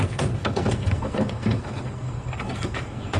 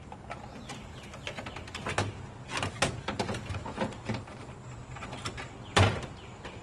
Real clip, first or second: second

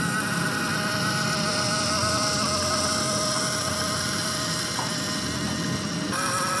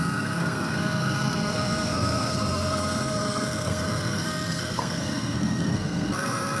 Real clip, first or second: first